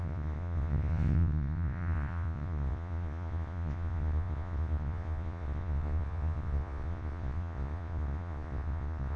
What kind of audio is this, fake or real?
fake